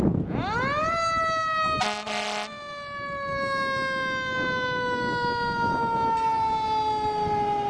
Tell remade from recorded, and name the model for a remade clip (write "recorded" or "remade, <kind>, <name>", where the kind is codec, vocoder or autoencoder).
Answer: recorded